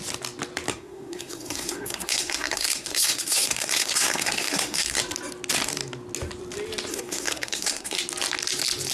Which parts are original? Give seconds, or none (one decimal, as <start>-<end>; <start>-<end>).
0.0-0.7; 5.0-6.9; 8.0-8.9